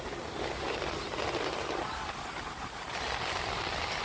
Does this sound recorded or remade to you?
recorded